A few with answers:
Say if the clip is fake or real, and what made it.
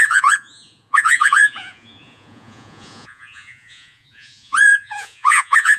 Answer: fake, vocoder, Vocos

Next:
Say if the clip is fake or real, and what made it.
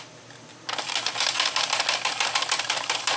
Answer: real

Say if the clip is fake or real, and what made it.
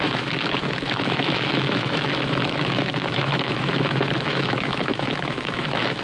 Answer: fake, autoencoder, DAC-VAE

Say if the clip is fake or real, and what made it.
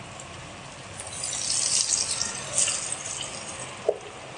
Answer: real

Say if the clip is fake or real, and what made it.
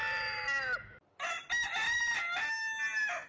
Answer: real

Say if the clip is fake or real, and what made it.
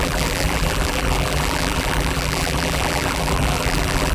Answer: fake, vocoder, BigVGAN v2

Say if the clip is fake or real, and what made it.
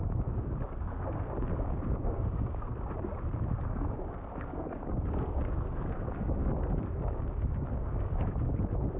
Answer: fake, codec, DAC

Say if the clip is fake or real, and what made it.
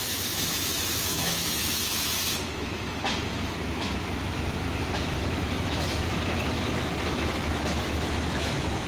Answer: fake, autoencoder, DAC-VAE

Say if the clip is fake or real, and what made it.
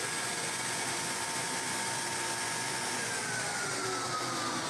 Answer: fake, vocoder, Vocos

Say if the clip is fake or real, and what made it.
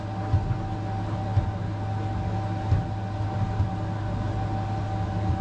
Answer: real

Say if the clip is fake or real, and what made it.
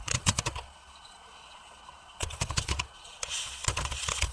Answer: fake, vocoder, Vocos